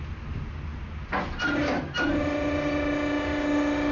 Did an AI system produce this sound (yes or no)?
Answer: no